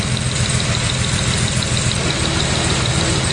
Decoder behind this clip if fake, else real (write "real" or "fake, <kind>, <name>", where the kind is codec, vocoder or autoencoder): real